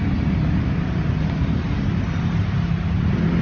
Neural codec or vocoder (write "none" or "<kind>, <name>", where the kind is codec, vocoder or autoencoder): none